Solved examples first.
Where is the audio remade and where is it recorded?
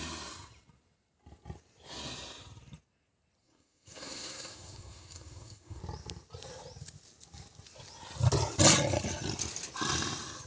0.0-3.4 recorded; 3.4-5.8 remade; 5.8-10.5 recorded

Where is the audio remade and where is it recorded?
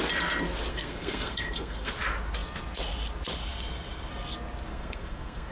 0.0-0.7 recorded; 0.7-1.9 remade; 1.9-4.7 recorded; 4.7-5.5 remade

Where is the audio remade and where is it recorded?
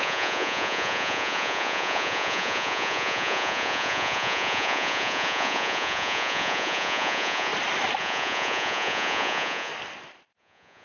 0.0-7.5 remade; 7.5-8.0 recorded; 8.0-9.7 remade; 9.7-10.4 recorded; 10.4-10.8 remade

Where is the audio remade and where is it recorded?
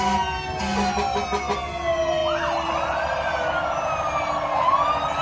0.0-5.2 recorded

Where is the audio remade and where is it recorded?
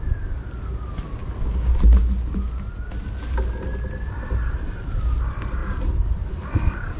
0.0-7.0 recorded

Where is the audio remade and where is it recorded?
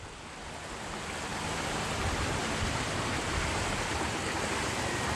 0.0-5.2 recorded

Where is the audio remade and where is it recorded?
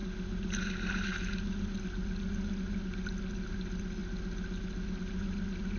0.0-5.8 recorded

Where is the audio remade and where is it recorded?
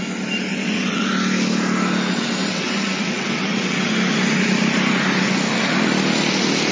0.0-0.5 recorded; 0.5-1.1 remade; 1.1-2.1 recorded; 2.1-3.9 remade; 3.9-6.7 recorded